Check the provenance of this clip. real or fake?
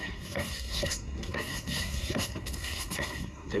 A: fake